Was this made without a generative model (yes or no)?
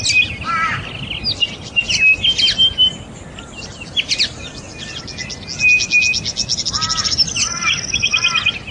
yes